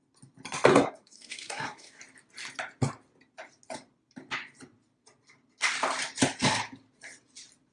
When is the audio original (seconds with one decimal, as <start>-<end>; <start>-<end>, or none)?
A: 0.0-0.7; 2.0-7.7